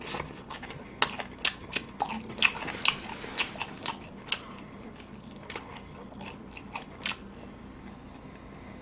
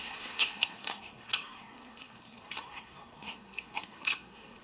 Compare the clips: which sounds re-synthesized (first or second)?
second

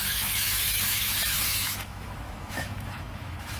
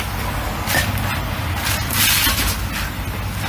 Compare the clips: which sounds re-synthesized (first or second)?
first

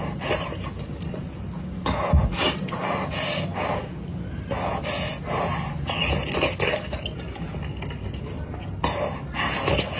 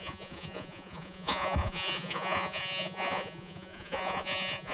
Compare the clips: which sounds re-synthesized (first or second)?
second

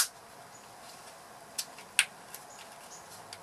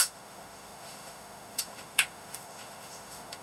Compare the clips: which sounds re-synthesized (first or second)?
second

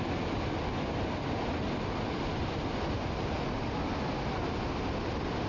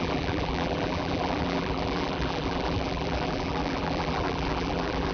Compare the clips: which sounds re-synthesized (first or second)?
second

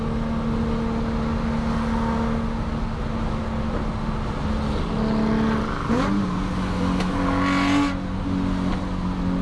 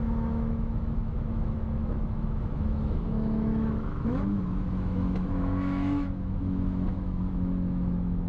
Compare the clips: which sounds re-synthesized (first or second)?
second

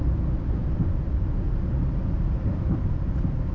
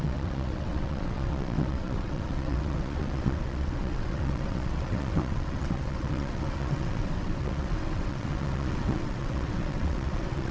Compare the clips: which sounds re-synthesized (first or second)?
second